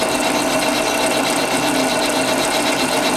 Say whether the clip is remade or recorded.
recorded